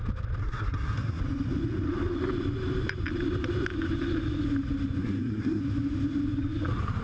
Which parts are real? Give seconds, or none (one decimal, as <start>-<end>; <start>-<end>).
0.0-0.4; 1.2-5.0; 5.6-7.0

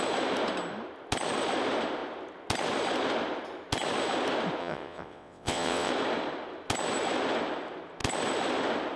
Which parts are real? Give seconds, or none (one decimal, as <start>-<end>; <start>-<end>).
0.0-4.6; 5.9-9.0